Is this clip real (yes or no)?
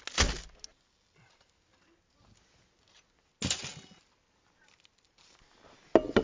yes